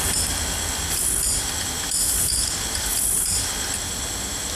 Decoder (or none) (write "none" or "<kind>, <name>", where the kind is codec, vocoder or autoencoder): none